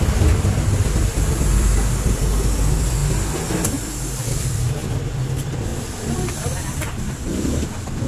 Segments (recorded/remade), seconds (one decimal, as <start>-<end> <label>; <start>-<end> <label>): 0.0-3.0 remade; 3.0-3.5 recorded; 3.5-5.7 remade; 5.7-6.3 recorded; 6.3-8.1 remade

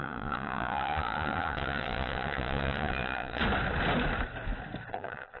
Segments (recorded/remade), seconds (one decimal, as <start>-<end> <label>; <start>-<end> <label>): 0.0-3.4 remade; 3.4-4.9 recorded; 4.9-5.4 remade

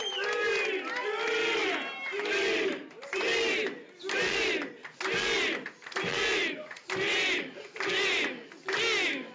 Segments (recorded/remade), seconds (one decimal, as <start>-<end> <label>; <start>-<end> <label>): 0.0-9.3 recorded

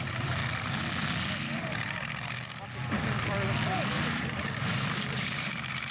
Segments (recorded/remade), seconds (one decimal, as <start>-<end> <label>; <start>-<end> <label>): 0.0-0.4 remade; 0.4-3.9 recorded; 3.9-5.9 remade

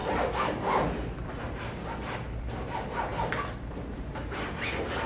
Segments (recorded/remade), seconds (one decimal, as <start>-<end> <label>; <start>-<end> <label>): 0.0-5.1 recorded

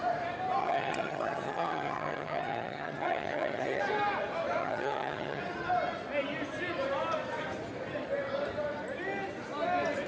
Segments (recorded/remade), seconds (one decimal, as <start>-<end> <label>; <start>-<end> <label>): 0.0-0.6 recorded; 0.6-3.8 remade; 3.8-4.6 recorded; 4.6-5.4 remade; 5.4-10.1 recorded

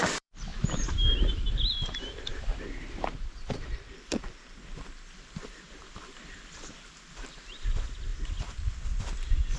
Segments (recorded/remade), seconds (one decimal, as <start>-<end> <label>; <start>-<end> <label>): 0.0-0.5 remade; 0.5-1.7 recorded; 1.7-9.6 remade

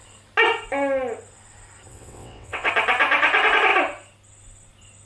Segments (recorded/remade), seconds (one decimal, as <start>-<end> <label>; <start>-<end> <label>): 0.0-1.9 recorded; 1.9-2.7 remade; 2.7-5.1 recorded